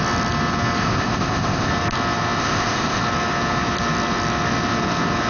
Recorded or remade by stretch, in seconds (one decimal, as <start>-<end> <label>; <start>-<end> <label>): 0.0-0.8 recorded; 0.8-1.7 remade; 1.7-2.4 recorded; 2.4-3.0 remade; 3.0-5.3 recorded

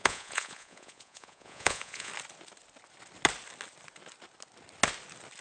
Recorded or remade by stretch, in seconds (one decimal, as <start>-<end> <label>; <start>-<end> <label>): 0.0-2.1 remade; 2.1-5.4 recorded

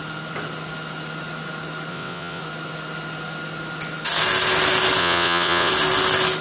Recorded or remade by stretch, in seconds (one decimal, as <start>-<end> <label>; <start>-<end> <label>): 0.0-1.9 recorded; 1.9-2.4 remade; 2.4-5.0 recorded; 5.0-5.7 remade; 5.7-6.4 recorded

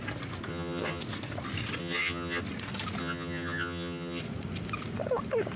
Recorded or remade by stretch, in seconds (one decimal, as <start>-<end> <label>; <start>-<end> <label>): 0.0-0.5 recorded; 0.5-1.0 remade; 1.0-1.8 recorded; 1.8-2.4 remade; 2.4-3.0 recorded; 3.0-4.2 remade; 4.2-5.6 recorded

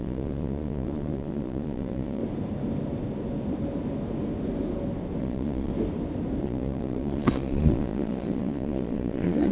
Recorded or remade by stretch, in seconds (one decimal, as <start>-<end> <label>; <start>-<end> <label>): 0.0-2.2 remade; 2.2-5.2 recorded; 5.2-5.7 remade; 5.7-6.4 recorded; 6.4-9.5 remade